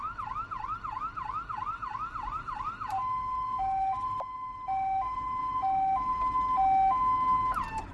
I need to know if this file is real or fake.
real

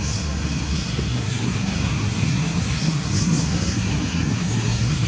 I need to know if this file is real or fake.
fake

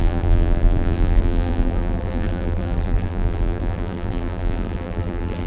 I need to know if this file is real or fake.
fake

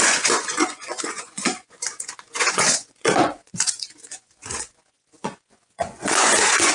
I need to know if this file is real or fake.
fake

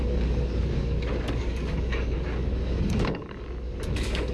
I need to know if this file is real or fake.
fake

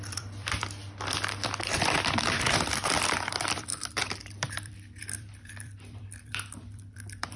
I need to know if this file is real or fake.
fake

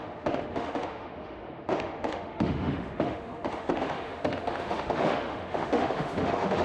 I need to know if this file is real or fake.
fake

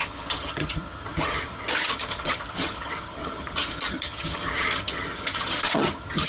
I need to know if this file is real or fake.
fake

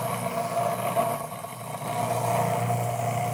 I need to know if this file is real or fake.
real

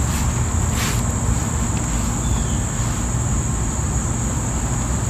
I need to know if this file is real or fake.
real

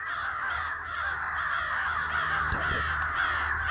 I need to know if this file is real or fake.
real